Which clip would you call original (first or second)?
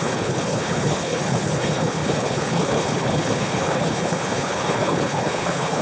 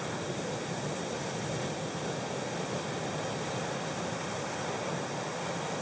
second